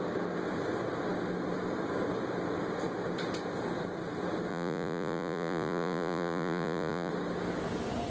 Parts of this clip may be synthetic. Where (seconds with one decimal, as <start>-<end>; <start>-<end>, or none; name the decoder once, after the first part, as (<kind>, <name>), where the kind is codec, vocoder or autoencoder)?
4.5-7.1 (vocoder, Vocos)